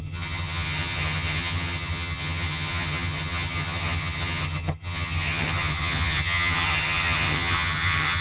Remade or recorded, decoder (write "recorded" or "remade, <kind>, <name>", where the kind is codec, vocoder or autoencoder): remade, vocoder, HiFi-GAN